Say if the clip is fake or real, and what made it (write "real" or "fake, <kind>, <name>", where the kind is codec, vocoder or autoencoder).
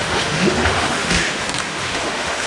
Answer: fake, autoencoder, DAC-VAE